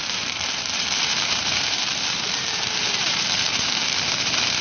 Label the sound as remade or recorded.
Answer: remade